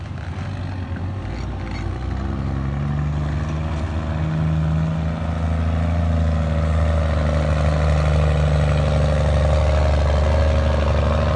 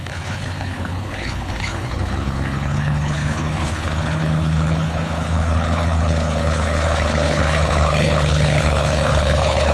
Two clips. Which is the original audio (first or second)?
first